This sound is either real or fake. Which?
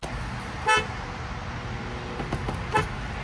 real